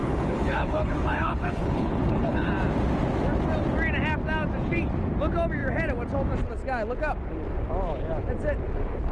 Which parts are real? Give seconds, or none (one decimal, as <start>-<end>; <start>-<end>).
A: 2.5-9.1